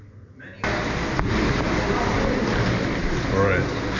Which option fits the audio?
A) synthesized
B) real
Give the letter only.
B